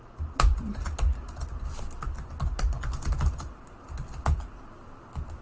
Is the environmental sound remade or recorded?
recorded